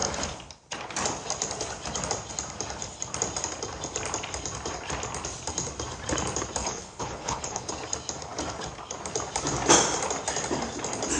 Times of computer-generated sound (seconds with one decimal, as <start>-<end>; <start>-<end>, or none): 6.6-7.7